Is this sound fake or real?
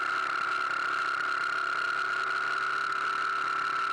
real